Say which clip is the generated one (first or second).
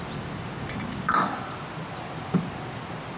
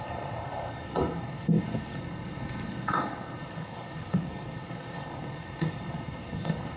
second